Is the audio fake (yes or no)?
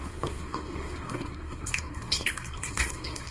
yes